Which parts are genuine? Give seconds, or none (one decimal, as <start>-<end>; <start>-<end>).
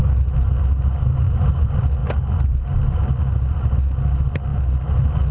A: 0.0-5.3